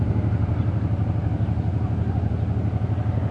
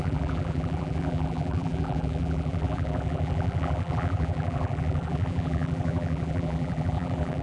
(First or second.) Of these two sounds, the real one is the first